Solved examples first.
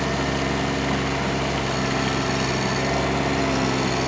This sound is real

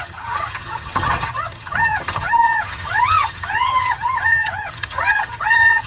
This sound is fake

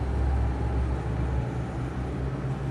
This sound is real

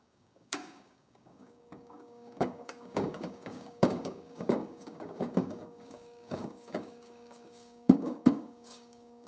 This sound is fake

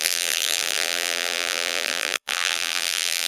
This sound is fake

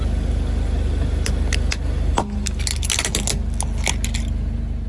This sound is real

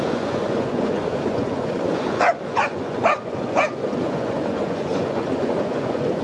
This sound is fake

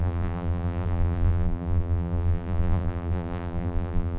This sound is fake